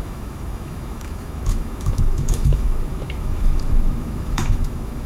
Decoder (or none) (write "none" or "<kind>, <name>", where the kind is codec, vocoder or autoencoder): autoencoder, DAC-VAE